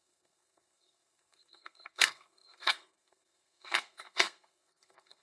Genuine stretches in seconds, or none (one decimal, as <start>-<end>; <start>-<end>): none